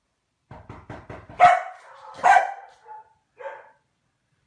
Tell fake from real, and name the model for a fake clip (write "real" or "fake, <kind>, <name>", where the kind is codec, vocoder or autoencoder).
fake, vocoder, BigVGAN v2